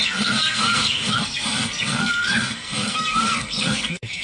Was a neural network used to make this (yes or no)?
yes